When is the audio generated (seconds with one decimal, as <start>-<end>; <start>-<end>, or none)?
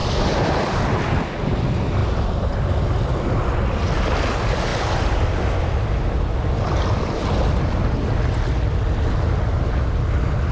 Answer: none